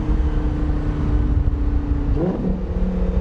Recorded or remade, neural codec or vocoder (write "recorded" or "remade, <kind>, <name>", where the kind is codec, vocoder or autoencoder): recorded